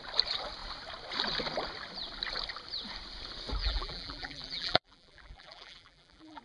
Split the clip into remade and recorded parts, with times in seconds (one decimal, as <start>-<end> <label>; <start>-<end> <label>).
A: 0.0-3.6 recorded; 3.6-6.4 remade

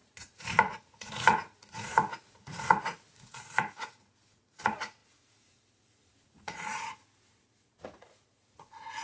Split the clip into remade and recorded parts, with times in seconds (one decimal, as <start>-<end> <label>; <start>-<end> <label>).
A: 0.0-9.0 remade

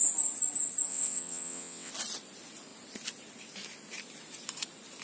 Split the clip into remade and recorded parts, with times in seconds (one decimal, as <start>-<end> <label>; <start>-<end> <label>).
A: 0.0-0.9 recorded; 0.9-1.9 remade; 1.9-5.0 recorded

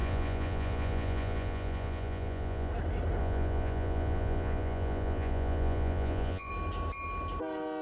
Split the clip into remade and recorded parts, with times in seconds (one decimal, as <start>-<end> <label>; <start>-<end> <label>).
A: 0.0-2.7 remade; 2.7-3.2 recorded; 3.2-6.5 remade; 6.5-7.8 recorded

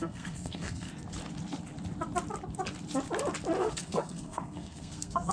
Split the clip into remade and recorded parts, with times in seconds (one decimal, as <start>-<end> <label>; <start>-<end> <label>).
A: 0.0-0.9 remade; 0.9-3.6 recorded; 3.6-5.3 remade

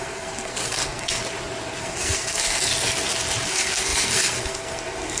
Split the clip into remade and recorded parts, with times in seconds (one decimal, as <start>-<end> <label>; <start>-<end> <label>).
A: 0.0-1.2 remade; 1.2-1.8 recorded; 1.8-2.7 remade; 2.7-3.5 recorded; 3.5-5.2 remade